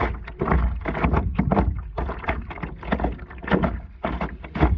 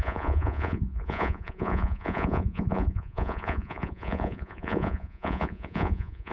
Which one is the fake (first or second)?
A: second